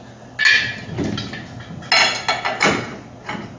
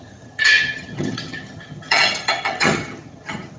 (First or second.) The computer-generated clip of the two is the second